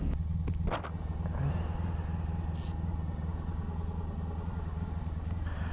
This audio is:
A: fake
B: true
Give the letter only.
B